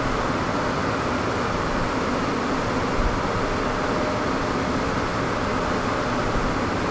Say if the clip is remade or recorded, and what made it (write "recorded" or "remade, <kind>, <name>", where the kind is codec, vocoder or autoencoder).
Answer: recorded